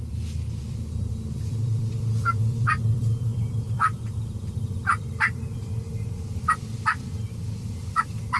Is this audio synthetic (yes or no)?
yes